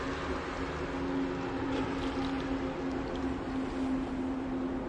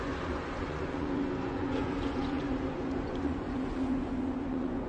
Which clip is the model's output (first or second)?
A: second